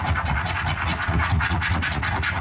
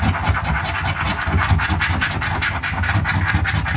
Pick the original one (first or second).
second